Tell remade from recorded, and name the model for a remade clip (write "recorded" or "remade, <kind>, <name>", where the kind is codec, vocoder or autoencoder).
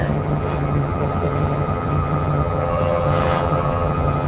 remade, vocoder, HiFi-GAN